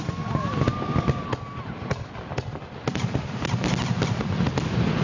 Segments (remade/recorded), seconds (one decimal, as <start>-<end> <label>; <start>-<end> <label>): 0.0-5.0 recorded